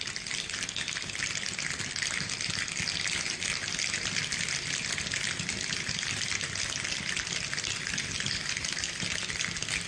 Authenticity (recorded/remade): recorded